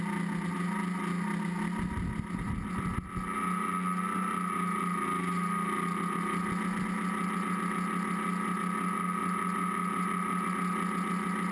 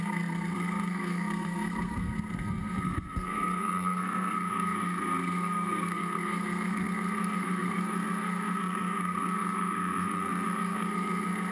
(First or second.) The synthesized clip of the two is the second